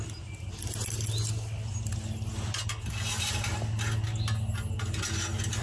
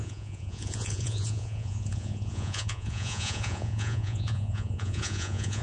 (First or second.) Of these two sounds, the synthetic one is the second